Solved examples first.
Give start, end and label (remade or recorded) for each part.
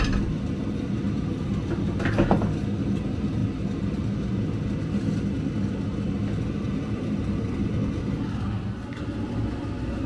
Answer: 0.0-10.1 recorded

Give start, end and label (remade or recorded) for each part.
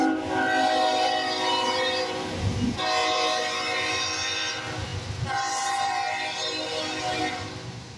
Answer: 0.0-8.0 recorded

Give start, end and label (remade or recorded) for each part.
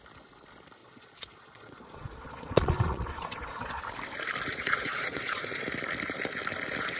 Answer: 0.0-0.8 recorded; 0.8-3.8 remade; 3.8-4.5 recorded; 4.5-5.6 remade; 5.6-7.0 recorded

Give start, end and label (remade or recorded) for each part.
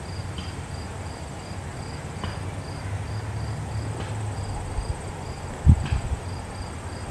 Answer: 0.0-7.1 recorded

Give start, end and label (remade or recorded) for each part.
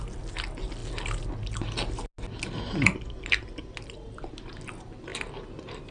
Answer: 0.0-5.9 recorded